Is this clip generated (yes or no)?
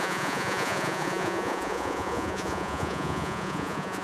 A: yes